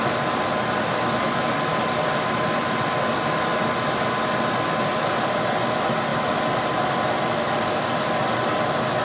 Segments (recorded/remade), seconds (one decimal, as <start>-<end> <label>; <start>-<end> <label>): 0.0-9.0 recorded